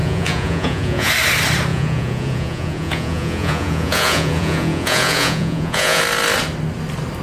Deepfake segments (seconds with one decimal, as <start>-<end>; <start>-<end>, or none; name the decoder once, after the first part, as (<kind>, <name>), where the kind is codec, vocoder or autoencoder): 0.0-1.1 (vocoder, Vocos); 1.7-6.0